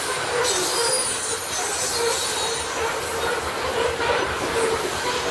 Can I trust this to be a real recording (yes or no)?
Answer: yes